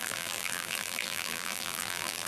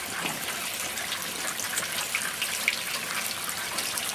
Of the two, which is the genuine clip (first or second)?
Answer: second